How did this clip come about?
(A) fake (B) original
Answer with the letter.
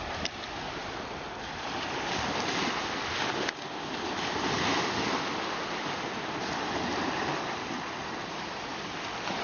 B